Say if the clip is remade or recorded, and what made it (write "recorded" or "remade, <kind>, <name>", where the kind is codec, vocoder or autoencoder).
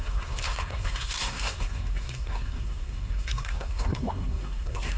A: remade, codec, SNAC